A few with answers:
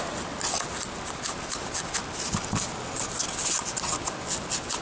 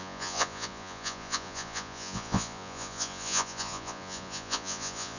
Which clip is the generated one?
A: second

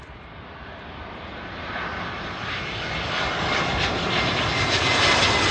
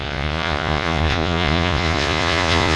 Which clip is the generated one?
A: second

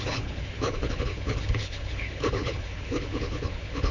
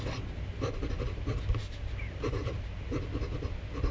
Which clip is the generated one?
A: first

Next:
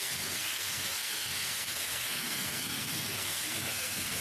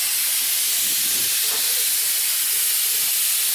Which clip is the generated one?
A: first